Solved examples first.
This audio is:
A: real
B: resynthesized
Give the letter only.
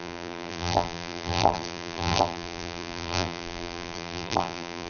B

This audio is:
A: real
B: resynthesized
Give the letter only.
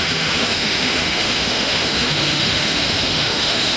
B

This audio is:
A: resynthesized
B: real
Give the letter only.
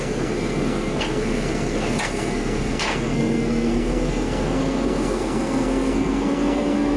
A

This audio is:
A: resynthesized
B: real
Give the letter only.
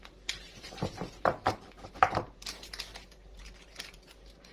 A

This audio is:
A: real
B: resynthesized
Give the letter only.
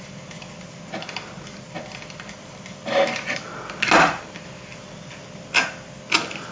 A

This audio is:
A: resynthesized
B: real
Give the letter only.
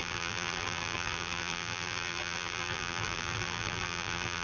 A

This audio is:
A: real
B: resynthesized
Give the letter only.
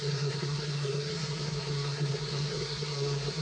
B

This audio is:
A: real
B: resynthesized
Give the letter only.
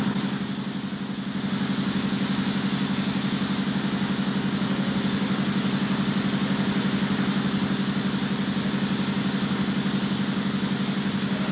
A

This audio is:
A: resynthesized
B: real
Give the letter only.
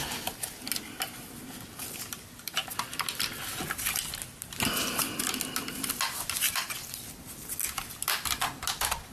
B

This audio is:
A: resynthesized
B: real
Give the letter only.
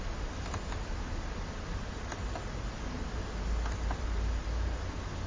B